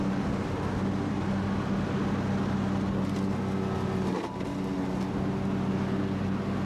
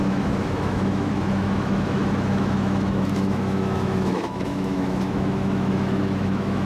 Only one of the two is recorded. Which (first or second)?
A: first